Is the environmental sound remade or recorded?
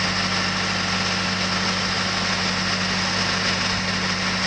recorded